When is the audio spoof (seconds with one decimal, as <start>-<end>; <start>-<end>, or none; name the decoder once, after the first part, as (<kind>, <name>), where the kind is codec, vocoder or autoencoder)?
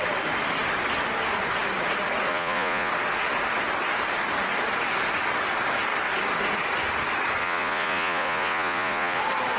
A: 2.3-2.9 (vocoder, Vocos); 7.4-9.2